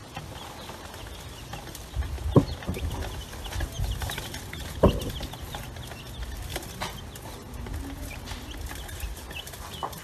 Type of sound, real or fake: real